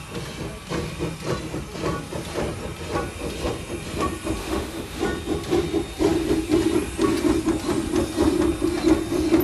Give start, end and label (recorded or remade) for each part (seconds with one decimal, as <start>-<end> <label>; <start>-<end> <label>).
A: 0.0-4.4 recorded; 4.4-5.0 remade; 5.0-9.4 recorded